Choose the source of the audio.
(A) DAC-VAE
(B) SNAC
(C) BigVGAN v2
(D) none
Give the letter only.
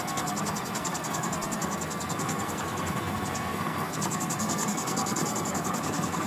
B